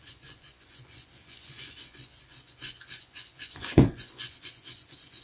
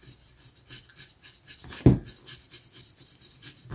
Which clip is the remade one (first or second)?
first